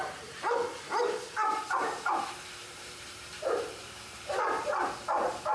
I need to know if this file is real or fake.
fake